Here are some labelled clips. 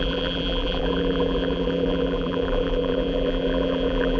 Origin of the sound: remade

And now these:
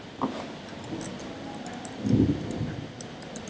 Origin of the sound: recorded